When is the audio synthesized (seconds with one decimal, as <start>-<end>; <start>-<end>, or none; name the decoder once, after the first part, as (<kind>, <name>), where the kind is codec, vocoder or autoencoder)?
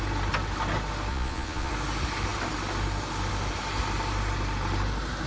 1.1-1.7 (vocoder, Vocos)